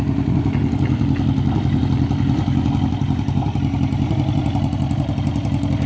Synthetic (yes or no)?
no